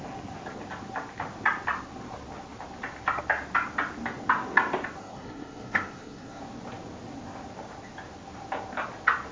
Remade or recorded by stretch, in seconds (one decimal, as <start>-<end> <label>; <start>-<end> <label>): 0.0-5.0 recorded; 5.0-6.4 remade; 6.4-9.3 recorded